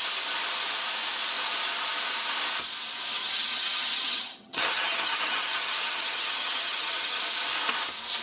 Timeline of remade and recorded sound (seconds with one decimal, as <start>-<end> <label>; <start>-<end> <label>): 0.0-3.2 recorded; 3.2-7.2 remade; 7.2-8.2 recorded